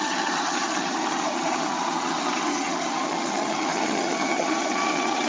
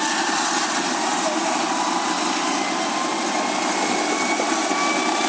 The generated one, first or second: first